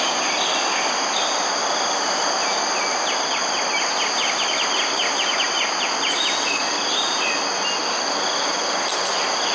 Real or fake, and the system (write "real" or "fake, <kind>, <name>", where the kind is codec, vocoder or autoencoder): real